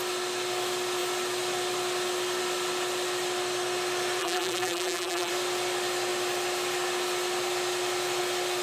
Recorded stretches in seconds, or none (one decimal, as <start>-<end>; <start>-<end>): 0.0-4.2; 5.3-8.6